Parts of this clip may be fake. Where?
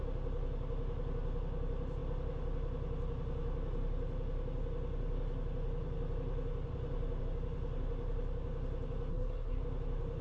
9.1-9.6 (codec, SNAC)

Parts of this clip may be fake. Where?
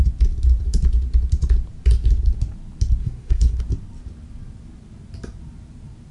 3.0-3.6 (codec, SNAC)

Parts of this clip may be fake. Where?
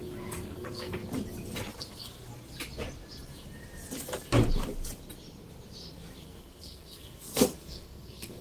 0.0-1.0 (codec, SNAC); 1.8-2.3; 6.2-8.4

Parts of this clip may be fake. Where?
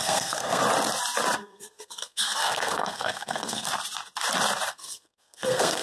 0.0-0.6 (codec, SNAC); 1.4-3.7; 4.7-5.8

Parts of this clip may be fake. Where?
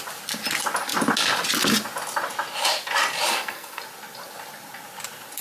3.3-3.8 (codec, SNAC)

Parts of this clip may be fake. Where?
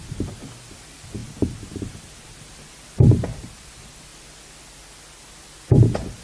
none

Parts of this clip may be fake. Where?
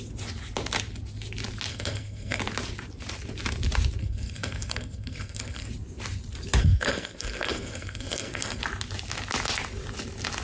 1.7-2.4 (codec, SNAC); 4.0-5.7; 6.6-8.6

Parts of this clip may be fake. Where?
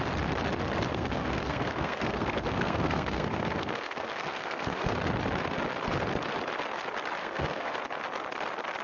0.9-4.9 (codec, SNAC); 7.2-7.8